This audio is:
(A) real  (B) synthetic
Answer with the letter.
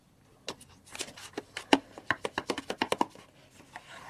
A